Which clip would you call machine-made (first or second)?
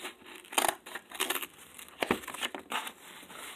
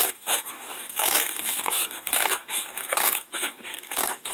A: second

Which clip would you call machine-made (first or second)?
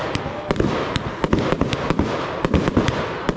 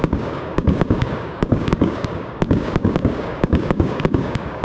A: second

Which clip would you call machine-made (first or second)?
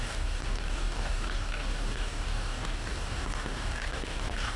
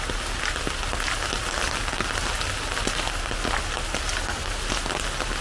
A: first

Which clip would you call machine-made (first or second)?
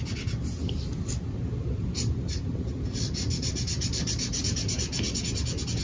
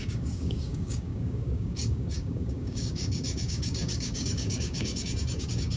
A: second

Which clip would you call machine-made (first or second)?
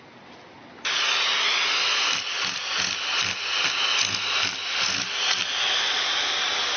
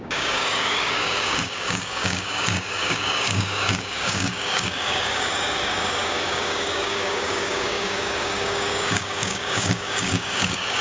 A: second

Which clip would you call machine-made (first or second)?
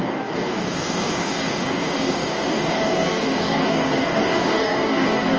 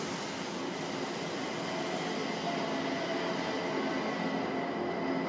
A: first